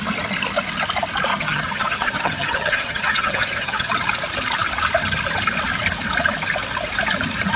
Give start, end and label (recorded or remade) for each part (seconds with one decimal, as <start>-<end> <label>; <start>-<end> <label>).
0.0-1.3 recorded; 1.3-3.9 remade; 3.9-7.6 recorded